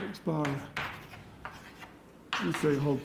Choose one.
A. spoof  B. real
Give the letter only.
B